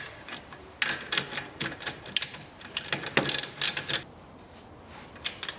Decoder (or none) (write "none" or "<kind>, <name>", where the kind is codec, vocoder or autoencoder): none